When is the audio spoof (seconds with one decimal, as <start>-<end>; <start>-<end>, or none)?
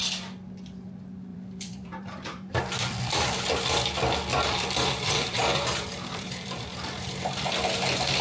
1.3-2.6; 4.3-7.2